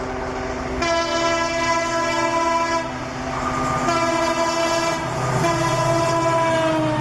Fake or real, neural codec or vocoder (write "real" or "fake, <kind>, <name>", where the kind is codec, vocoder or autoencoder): real